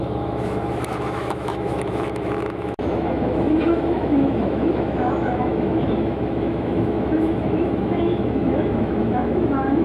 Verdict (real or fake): fake